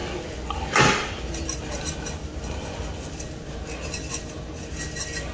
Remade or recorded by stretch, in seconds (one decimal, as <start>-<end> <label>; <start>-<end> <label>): 0.0-5.3 recorded